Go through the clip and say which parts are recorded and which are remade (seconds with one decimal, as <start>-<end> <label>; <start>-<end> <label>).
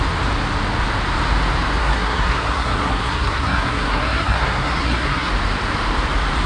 0.0-1.8 recorded; 1.8-5.3 remade; 5.3-6.5 recorded